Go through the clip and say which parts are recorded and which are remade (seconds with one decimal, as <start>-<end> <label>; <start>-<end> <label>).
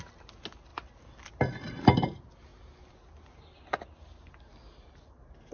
0.0-5.5 recorded